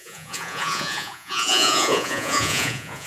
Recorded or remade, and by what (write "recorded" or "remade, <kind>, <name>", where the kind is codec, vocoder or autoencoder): remade, vocoder, Vocos